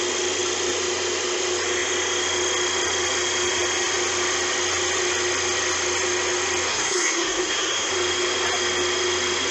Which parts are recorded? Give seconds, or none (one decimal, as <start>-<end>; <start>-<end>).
0.0-6.7; 7.9-9.5